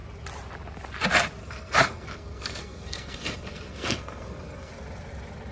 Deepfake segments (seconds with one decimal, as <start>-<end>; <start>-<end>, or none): 1.4-4.7